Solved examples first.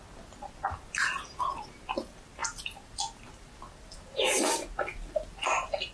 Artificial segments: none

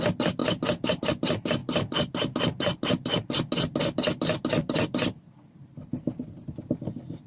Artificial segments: none

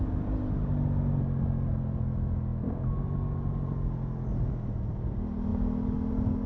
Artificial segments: none

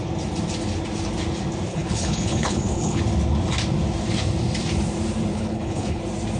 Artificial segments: 1.7-3.0 (codec, HILCodec); 5.3-6.0

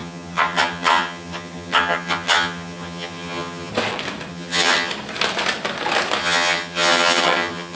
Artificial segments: 0.0-3.7 (vocoder, HiFi-GAN); 4.3-4.9; 6.2-7.8

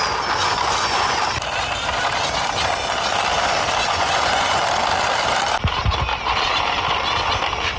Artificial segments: 0.4-1.2 (vocoder, Vocos); 3.8-4.6

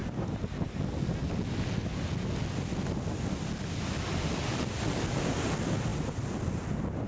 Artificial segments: none

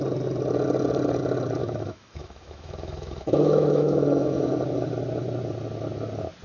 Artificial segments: 1.6-4.5 (autoencoder, DAC-VAE)